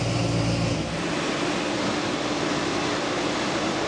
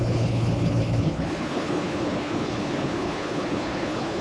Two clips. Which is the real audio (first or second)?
first